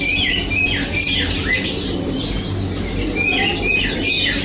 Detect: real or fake real